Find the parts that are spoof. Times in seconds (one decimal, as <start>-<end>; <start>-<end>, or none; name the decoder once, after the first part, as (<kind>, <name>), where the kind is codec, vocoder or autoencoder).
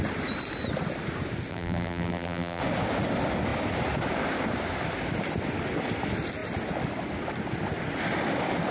1.5-2.6 (vocoder, BigVGAN v2)